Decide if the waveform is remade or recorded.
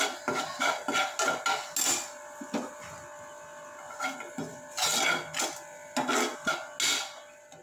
recorded